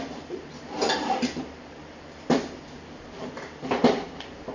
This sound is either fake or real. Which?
fake